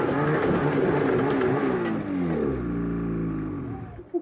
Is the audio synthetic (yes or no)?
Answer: no